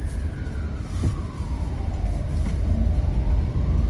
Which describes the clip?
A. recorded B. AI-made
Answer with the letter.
A